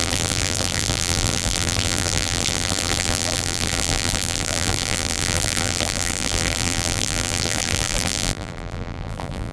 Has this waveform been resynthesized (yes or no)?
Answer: yes